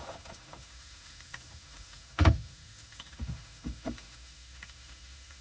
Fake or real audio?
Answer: fake